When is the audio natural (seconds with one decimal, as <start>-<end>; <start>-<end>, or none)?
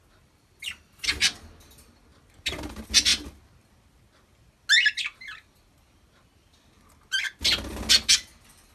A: 0.0-8.7